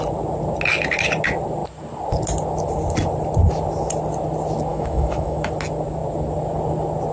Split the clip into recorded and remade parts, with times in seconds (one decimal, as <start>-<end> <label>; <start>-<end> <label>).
0.0-4.7 recorded; 4.7-5.5 remade; 5.5-7.1 recorded